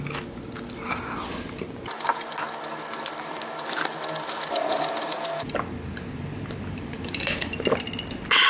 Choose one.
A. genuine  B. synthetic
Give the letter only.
A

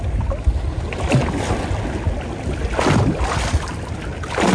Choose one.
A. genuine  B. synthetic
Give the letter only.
A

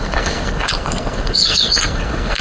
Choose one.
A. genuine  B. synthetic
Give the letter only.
B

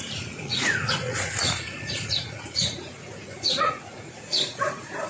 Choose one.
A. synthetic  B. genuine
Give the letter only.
A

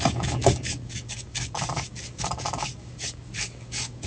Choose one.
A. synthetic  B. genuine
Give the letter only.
A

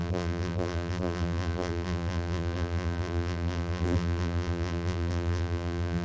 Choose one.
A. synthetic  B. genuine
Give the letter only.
A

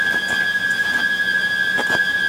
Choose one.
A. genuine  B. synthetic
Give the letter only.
A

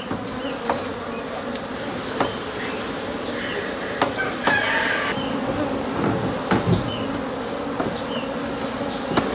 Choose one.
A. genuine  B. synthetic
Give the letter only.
A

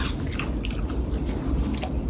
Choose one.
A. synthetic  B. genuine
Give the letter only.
B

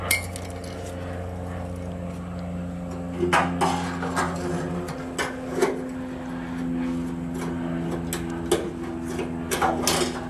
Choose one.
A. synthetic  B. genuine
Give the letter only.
B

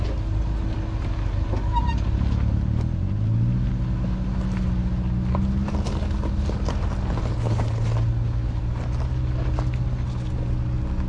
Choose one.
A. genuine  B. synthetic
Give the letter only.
A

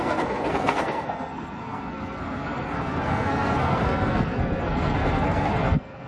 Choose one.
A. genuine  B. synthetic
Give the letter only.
B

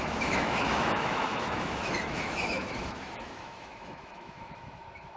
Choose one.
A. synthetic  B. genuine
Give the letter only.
A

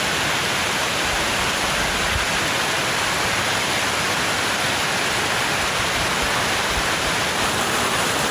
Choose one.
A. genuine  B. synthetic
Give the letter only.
A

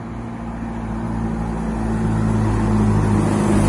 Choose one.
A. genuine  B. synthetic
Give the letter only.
A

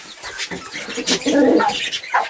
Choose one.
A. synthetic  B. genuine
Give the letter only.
B